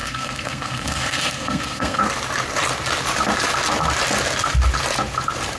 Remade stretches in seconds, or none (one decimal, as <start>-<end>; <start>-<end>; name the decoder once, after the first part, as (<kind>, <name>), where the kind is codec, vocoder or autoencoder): 0.0-2.0 (codec, SNAC)